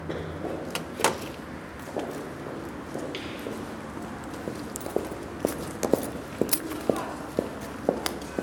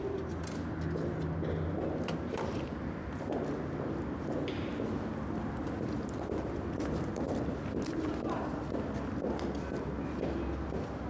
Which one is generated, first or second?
second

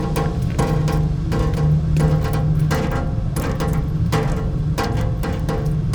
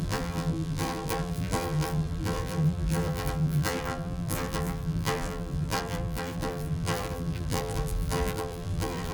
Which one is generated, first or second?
second